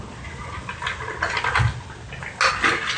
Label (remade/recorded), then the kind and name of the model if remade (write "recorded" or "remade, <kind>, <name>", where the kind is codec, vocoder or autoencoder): recorded